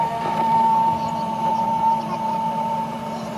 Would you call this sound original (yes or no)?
no